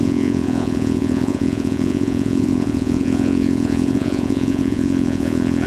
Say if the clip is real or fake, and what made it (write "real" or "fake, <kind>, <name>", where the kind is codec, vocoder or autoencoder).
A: fake, vocoder, Vocos